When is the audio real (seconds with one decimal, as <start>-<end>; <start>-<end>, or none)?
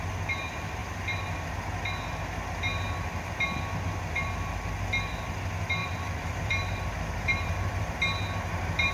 0.0-5.8; 7.9-8.9